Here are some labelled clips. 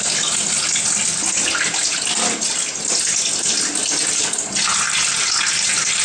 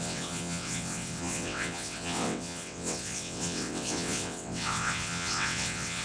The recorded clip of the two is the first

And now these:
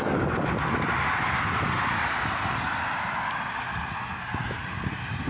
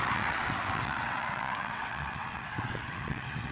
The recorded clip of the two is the first